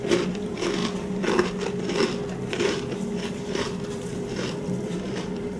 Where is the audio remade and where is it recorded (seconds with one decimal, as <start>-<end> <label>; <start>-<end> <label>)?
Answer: 0.0-0.8 remade; 0.8-3.3 recorded; 3.3-5.6 remade